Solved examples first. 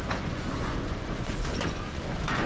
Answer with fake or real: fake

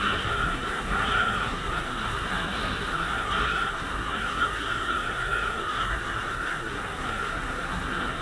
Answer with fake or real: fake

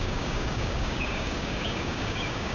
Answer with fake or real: fake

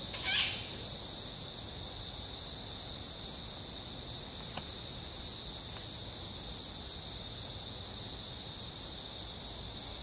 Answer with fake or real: real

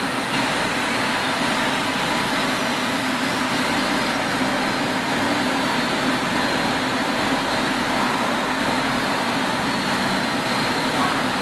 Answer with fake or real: real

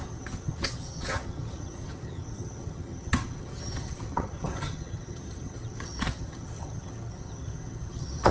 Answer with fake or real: fake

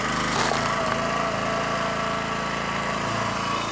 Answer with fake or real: real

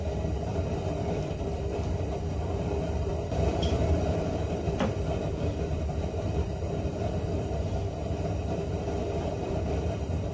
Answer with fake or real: fake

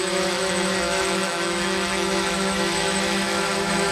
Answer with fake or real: fake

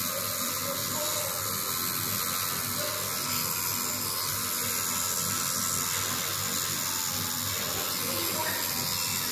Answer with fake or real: real